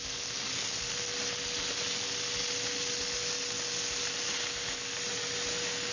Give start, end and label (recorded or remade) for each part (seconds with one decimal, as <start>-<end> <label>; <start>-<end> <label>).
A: 0.0-5.9 recorded